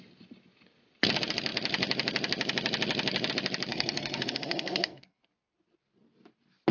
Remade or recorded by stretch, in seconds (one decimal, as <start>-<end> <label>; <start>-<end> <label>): 0.0-3.7 recorded; 3.7-5.2 remade; 5.2-6.7 recorded